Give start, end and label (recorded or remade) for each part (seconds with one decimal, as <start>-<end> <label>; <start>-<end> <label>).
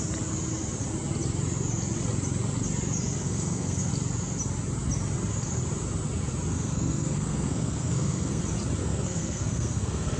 0.0-3.2 recorded; 3.2-3.9 remade; 3.9-6.5 recorded; 6.5-8.4 remade; 8.4-8.8 recorded; 8.8-10.2 remade